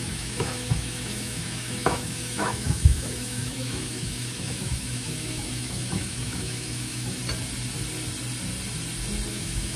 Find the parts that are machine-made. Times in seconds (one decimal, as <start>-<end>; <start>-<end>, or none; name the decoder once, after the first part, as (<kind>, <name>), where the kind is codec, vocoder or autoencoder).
0.0-7.2 (autoencoder, DAC-VAE); 9.3-9.8